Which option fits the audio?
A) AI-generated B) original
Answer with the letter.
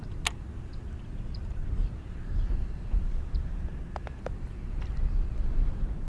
B